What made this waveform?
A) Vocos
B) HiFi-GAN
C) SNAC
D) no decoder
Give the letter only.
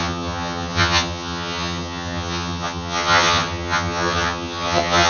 B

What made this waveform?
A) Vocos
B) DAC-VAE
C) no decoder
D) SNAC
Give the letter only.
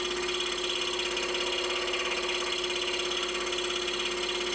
C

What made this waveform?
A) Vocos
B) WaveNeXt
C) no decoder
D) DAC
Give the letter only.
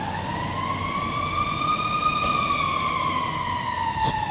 C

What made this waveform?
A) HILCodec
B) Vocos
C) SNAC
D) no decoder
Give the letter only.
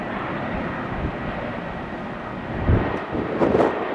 D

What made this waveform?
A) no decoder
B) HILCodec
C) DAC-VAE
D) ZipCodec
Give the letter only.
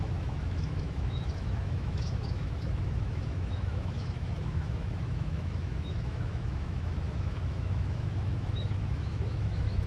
C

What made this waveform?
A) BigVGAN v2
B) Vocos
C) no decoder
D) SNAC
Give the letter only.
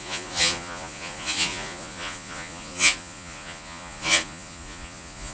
B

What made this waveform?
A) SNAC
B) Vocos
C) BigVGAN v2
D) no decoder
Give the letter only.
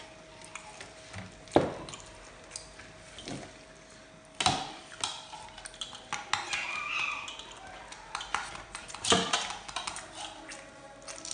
D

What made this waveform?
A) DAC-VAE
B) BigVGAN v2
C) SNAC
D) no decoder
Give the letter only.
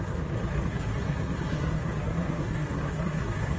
C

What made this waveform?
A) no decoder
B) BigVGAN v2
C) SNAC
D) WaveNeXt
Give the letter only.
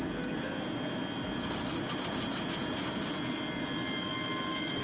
A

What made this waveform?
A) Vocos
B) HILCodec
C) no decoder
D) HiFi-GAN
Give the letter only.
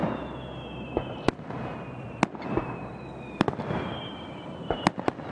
C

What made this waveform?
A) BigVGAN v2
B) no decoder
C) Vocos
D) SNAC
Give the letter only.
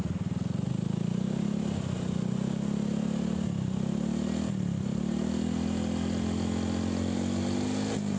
B